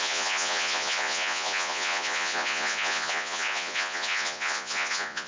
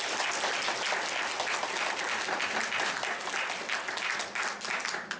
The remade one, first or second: first